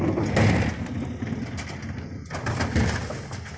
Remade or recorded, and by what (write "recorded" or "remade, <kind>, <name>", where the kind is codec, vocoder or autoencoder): recorded